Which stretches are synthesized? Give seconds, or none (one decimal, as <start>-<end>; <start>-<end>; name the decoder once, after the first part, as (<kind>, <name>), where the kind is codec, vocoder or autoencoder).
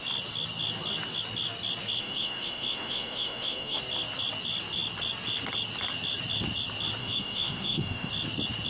2.0-3.8 (autoencoder, DAC-VAE); 7.0-8.1